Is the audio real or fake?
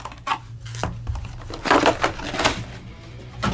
real